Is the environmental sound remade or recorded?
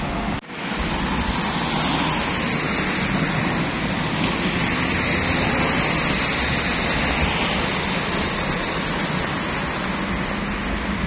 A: recorded